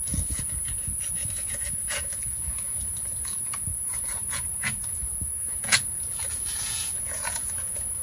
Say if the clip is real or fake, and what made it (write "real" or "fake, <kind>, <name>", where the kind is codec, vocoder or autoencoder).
fake, vocoder, Vocos